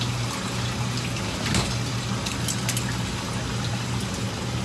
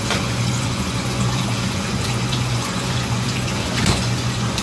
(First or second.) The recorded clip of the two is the first